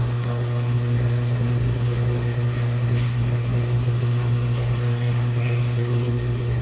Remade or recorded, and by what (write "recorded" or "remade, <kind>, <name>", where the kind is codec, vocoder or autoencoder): remade, codec, SNAC